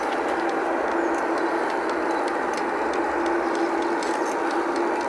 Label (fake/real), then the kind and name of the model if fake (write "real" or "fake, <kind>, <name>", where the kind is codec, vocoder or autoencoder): real